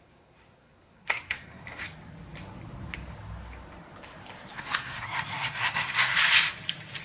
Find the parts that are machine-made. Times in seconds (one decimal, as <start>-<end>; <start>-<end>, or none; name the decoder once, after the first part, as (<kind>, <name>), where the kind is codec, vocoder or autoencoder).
0.0-1.8 (codec, SNAC); 4.5-6.0